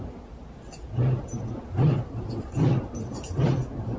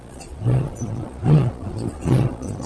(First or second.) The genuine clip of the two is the first